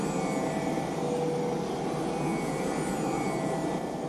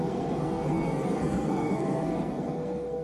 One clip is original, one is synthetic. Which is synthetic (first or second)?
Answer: second